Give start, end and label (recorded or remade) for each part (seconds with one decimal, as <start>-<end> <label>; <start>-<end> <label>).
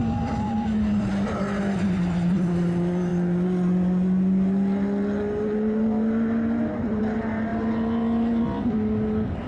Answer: 0.0-1.1 remade; 1.1-9.5 recorded